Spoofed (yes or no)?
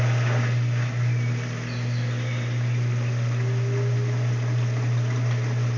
no